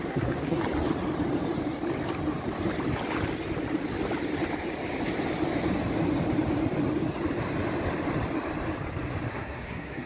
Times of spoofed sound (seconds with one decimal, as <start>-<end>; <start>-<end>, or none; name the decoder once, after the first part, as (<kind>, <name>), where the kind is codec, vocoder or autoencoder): 0.0-0.6 (codec, SNAC); 9.3-10.1